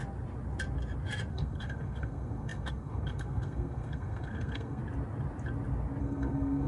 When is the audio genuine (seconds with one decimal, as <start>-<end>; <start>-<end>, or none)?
0.0-1.3; 4.8-6.0